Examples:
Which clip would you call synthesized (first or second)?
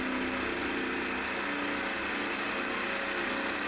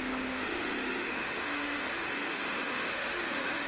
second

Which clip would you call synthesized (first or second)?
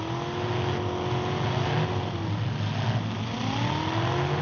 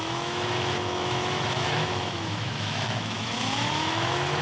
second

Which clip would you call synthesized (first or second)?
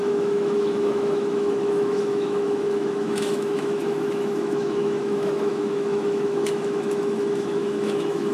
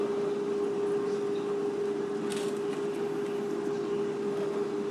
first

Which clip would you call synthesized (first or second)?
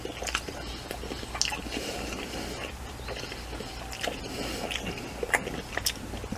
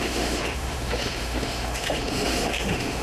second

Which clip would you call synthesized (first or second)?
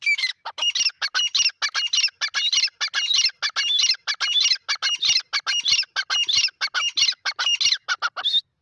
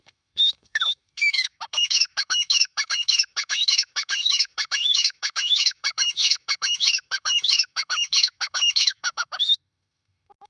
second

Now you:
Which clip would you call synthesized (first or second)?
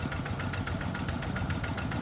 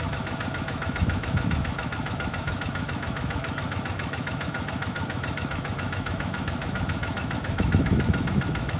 second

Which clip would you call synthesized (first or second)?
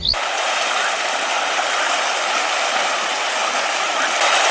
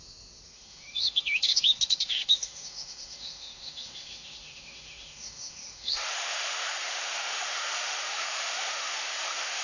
second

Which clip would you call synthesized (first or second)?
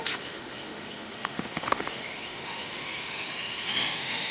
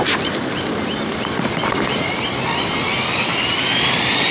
first